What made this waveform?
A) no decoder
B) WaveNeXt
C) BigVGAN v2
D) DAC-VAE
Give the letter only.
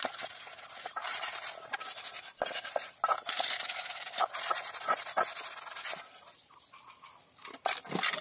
A